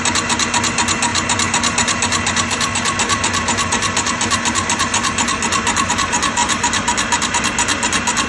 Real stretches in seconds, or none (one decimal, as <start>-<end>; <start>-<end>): 0.0-8.3